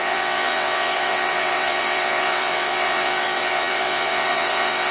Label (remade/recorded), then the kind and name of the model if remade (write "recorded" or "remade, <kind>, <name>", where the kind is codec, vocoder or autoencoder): remade, vocoder, WaveNeXt